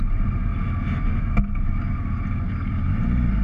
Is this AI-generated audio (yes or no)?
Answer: no